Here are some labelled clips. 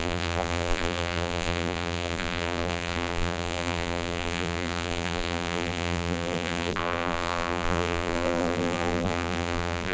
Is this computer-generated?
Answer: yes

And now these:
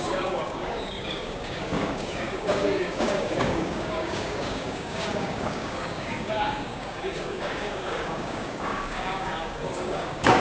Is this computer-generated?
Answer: yes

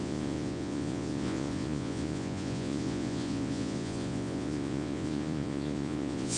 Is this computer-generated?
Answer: yes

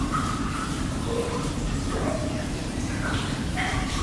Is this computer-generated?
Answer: yes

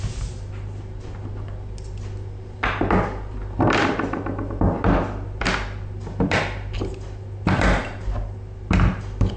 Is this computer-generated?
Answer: no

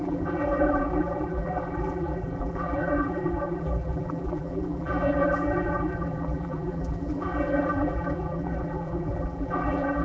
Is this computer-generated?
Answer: yes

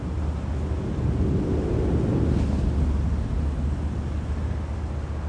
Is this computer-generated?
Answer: no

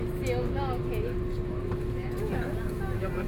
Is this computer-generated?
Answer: no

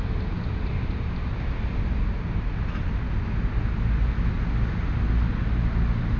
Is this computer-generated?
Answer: no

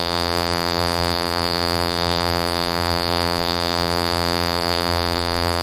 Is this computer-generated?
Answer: yes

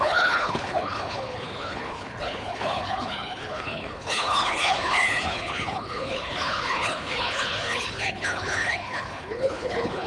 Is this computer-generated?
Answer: yes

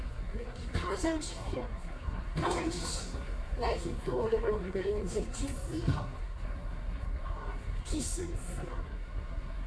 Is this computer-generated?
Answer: yes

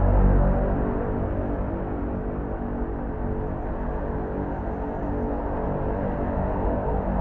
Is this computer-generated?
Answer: no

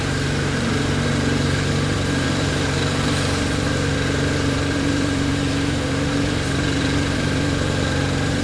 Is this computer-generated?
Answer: yes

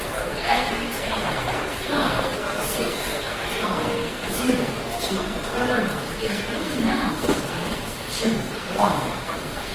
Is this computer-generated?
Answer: yes